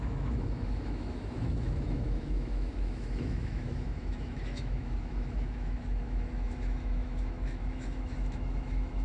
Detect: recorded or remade remade